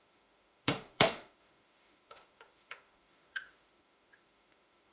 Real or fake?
fake